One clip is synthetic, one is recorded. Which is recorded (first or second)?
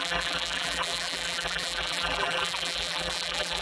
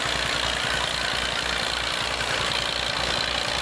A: second